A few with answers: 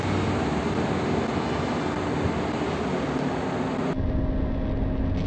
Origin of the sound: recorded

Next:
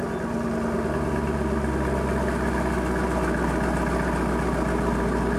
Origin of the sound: recorded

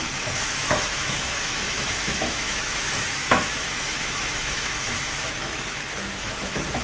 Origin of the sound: remade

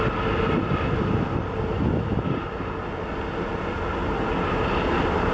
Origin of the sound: recorded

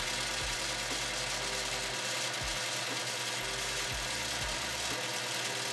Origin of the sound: recorded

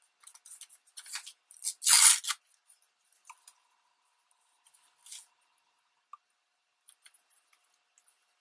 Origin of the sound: recorded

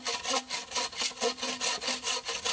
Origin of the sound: recorded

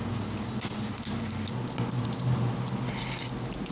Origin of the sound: recorded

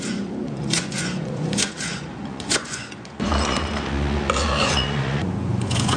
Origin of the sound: remade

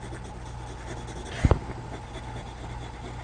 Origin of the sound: recorded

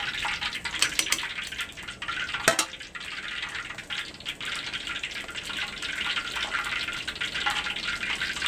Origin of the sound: recorded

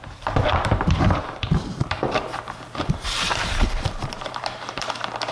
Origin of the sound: remade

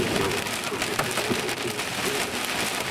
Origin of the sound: recorded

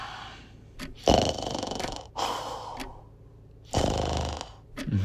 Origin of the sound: recorded